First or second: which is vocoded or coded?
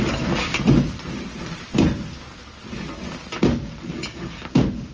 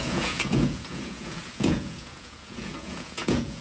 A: second